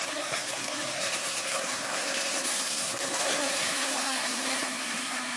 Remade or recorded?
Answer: remade